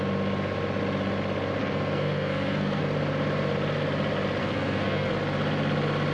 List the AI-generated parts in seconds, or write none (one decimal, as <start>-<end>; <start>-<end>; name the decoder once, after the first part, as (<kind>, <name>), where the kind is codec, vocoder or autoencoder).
1.6-2.8 (codec, SNAC); 4.4-5.1